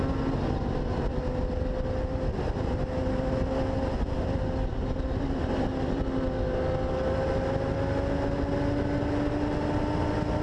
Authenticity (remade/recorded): recorded